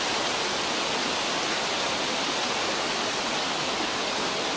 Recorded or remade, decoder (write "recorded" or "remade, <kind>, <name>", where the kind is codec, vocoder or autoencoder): recorded